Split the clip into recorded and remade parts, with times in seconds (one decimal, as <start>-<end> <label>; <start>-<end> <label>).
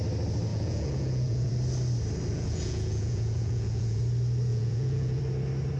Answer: 0.0-0.5 recorded; 0.5-1.5 remade; 1.5-2.3 recorded; 2.3-4.0 remade; 4.0-4.5 recorded; 4.5-5.2 remade; 5.2-5.8 recorded